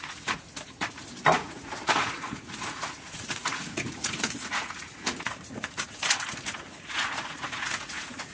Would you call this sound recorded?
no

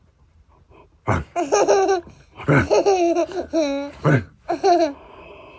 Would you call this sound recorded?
yes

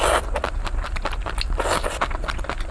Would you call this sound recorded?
yes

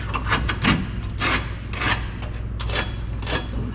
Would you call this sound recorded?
yes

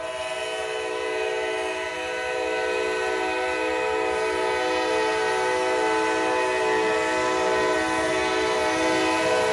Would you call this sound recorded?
yes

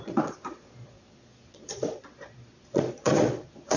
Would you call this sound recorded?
no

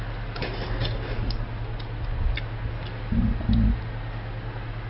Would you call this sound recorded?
yes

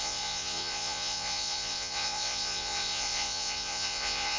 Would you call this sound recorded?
no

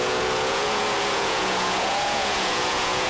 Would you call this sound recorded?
no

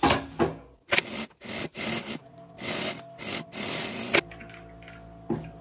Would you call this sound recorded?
yes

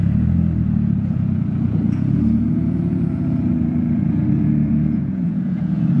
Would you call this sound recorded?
no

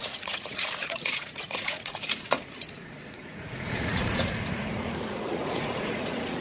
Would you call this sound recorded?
no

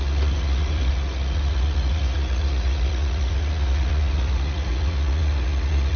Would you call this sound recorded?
no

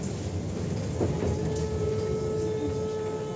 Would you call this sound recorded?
yes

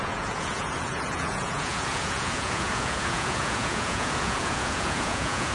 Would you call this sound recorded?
no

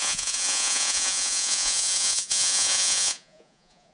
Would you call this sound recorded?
no